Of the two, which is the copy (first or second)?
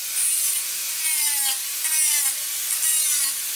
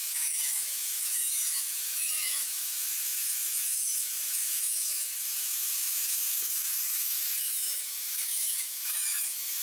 second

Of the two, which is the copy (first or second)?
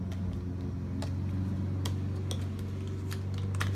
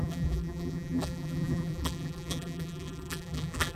second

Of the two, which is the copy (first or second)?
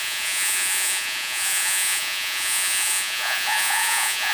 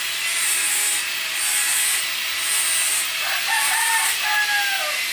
first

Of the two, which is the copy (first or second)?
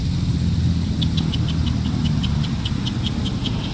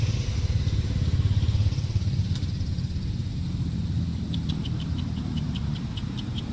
second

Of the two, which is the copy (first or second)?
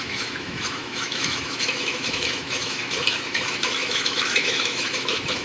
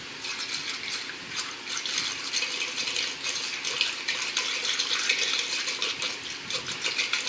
first